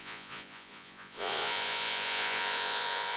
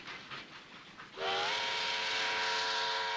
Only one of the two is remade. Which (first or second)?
first